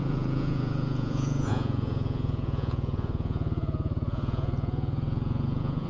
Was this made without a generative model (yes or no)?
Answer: no